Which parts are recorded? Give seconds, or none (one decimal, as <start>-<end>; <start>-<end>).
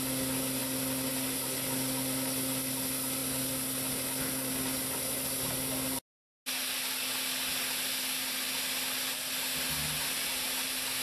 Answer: 0.0-11.0